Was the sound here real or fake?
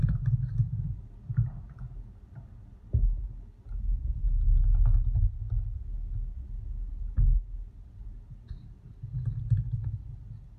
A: real